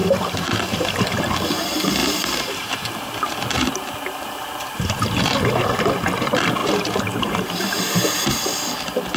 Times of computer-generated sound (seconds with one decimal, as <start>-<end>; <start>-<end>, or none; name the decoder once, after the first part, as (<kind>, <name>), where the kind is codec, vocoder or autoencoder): 0.0-0.9 (vocoder, BigVGAN v2); 2.0-5.3; 6.6-8.6